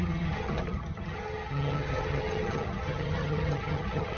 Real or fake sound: fake